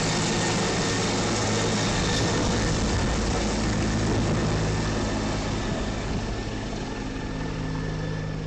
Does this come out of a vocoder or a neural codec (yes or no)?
no